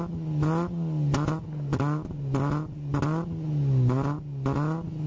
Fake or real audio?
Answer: real